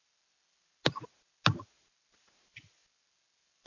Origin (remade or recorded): recorded